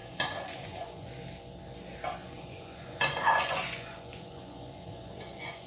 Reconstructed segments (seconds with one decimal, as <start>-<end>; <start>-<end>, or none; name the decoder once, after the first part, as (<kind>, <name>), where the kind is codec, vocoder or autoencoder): 0.0-1.1 (vocoder, Vocos); 2.2-5.7